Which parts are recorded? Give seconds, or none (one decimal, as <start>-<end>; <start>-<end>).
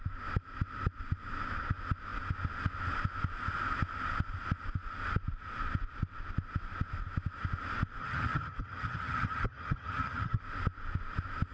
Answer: 0.0-8.0; 10.4-11.5